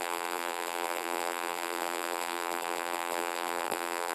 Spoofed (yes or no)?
yes